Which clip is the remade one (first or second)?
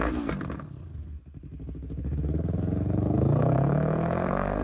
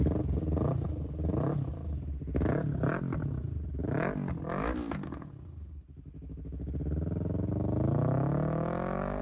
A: first